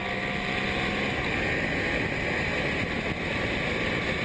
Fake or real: real